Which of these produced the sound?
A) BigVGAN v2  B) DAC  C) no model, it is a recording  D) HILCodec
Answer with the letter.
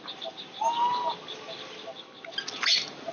C